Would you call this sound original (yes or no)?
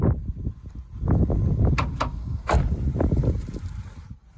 yes